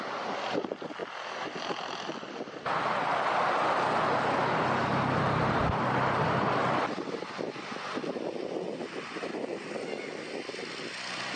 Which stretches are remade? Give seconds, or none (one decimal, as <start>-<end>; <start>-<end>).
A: none